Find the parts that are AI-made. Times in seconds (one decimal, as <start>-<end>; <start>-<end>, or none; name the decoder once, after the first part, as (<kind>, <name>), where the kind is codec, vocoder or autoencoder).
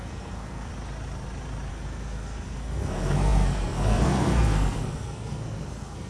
0.0-0.7 (codec, SNAC); 1.7-6.1